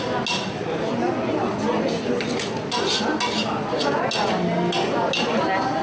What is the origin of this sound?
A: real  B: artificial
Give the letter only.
A